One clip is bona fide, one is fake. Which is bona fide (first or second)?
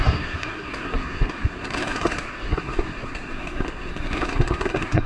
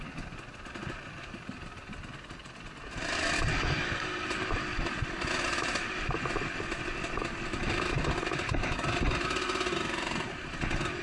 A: second